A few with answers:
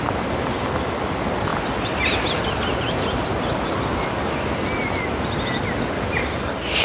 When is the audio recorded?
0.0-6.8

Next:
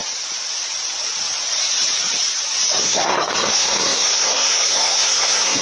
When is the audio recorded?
0.0-2.8

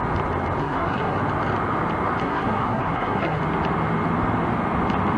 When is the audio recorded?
0.0-0.6; 1.2-2.2; 3.4-5.2

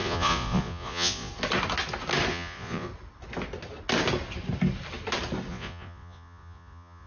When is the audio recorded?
1.3-2.3; 2.9-5.5

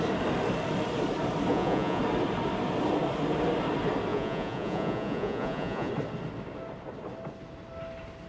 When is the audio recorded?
0.0-1.5; 2.0-4.1; 5.9-8.3

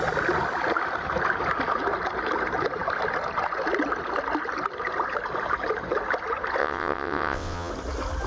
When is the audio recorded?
0.0-6.6; 7.7-8.3